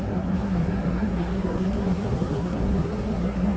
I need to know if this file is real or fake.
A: fake